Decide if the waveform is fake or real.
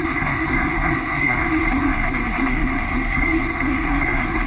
fake